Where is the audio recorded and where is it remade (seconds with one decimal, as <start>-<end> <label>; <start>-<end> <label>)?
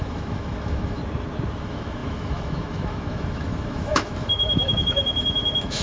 0.0-1.0 remade; 1.0-1.6 recorded; 1.6-5.8 remade